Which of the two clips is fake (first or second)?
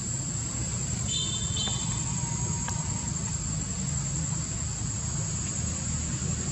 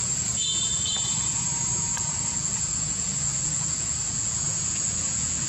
second